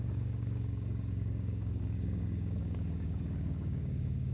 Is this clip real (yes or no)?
no